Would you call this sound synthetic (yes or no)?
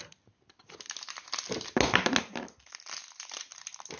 no